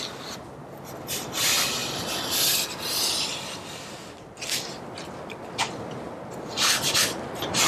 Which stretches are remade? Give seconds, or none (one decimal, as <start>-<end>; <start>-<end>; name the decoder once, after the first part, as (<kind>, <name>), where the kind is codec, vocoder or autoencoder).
none